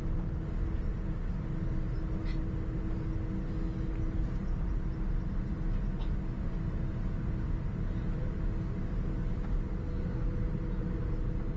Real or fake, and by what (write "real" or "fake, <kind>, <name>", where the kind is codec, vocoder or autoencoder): real